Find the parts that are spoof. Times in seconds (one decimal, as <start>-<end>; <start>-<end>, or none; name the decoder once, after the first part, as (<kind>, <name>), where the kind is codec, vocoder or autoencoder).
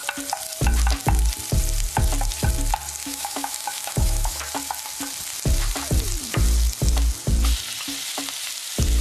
3.0-4.4 (autoencoder, DAC-VAE)